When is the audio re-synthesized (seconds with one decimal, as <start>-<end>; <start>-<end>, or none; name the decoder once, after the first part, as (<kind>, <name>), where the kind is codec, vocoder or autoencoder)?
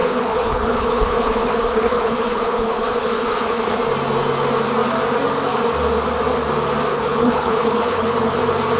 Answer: 0.0-3.8 (codec, HILCodec); 6.9-8.4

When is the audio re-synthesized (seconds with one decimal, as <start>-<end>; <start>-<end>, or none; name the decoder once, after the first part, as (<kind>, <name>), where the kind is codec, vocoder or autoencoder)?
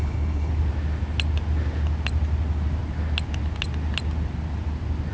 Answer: 0.0-0.5 (codec, HILCodec)